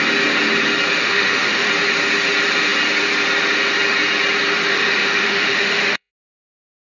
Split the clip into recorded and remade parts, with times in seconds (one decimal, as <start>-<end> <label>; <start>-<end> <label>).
0.0-1.0 recorded; 1.0-1.7 remade; 1.7-4.7 recorded; 4.7-6.1 remade; 6.1-6.9 recorded